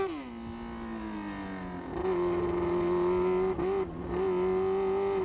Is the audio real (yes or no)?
yes